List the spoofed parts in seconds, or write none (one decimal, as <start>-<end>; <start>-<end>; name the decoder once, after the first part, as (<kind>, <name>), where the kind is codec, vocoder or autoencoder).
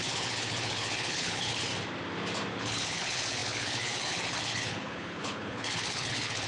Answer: 0.0-1.7 (codec, HILCodec); 2.5-6.5